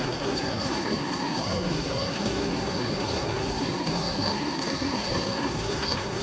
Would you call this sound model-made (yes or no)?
yes